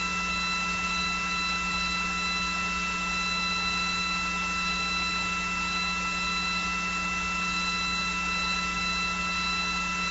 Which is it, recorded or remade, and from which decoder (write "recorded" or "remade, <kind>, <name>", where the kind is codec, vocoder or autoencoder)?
recorded